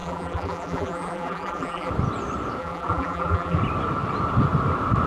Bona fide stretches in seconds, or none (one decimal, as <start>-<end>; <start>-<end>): 1.9-2.6; 3.6-5.1